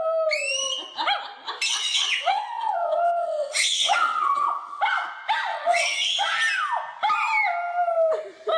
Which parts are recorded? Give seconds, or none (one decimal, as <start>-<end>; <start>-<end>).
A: 0.0-1.7; 4.8-5.5; 6.3-8.6